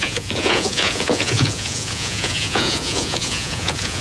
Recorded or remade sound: remade